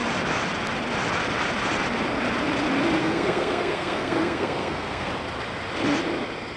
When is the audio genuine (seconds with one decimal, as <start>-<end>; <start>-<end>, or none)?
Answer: 0.0-3.0; 5.1-6.6